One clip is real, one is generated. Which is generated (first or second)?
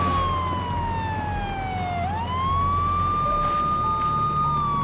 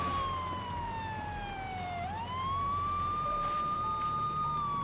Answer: second